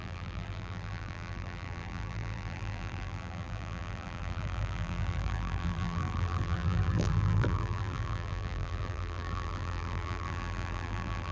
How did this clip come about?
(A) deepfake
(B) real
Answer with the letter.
A